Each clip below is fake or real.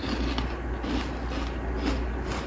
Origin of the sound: real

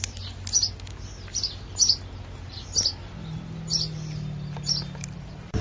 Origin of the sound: real